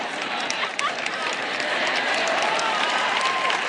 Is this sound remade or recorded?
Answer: remade